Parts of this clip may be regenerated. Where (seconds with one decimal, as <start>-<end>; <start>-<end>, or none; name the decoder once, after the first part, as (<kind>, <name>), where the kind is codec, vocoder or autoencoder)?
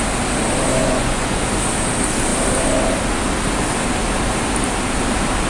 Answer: 0.8-1.4 (vocoder, Vocos)